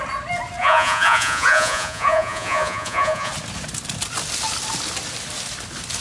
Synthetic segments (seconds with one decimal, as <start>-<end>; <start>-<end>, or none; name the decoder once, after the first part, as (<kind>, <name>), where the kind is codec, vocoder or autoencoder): 0.6-3.3 (vocoder, Vocos)